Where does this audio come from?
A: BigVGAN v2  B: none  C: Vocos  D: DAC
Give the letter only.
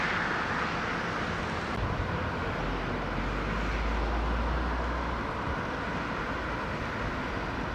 B